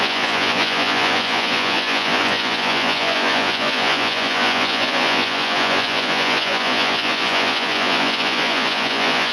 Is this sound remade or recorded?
remade